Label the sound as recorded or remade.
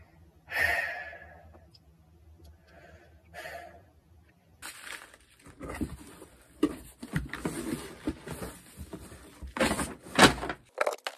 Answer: recorded